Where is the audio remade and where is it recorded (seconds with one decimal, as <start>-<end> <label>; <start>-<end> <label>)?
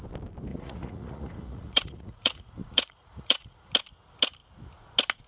0.0-0.5 recorded; 0.5-3.7 remade; 3.7-5.3 recorded